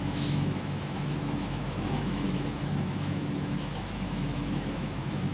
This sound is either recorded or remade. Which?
remade